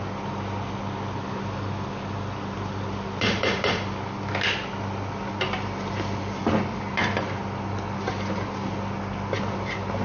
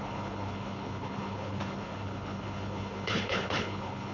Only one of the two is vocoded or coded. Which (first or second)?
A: second